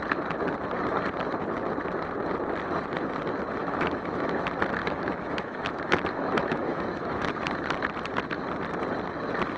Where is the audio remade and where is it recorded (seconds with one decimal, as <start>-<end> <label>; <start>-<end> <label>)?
0.0-3.6 recorded; 3.6-4.3 remade; 4.3-4.8 recorded; 4.8-7.4 remade; 7.4-9.6 recorded